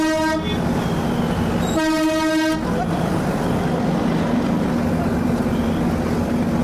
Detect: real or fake real